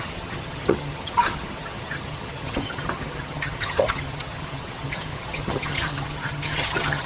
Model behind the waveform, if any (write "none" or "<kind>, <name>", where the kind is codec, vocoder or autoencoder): vocoder, HiFi-GAN